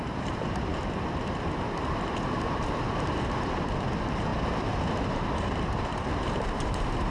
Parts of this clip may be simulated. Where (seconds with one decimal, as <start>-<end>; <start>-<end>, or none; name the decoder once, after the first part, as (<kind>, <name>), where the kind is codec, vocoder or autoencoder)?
0.0-0.7 (vocoder, BigVGAN v2); 3.1-7.1